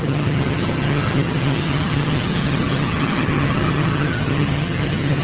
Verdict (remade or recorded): remade